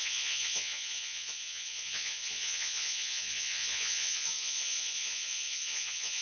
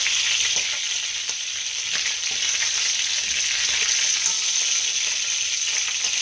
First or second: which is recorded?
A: second